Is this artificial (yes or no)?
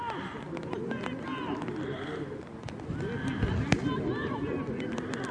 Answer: no